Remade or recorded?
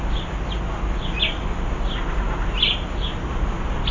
recorded